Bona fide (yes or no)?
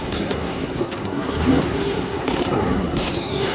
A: no